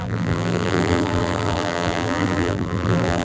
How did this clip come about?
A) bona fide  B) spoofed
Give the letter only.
B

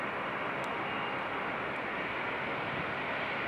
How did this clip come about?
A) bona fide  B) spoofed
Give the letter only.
A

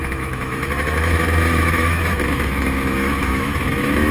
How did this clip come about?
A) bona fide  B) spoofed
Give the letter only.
B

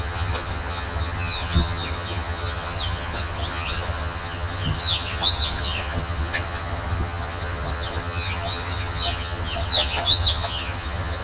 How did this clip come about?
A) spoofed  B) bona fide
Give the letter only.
A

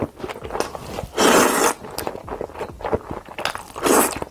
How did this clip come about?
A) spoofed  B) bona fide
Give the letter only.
B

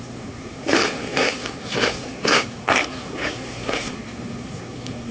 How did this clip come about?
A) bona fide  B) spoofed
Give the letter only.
B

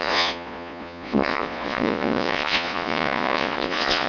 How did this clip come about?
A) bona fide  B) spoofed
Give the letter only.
B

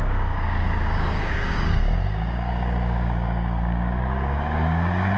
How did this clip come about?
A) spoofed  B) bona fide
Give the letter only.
A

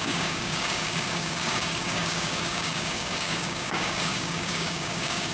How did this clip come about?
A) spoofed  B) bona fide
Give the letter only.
A